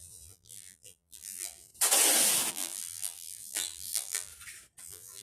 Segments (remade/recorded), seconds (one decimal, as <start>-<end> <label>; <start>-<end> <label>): 0.0-1.7 remade; 1.7-2.5 recorded; 2.5-4.3 remade; 4.3-4.8 recorded; 4.8-5.2 remade